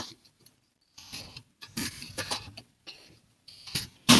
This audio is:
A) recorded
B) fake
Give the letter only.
B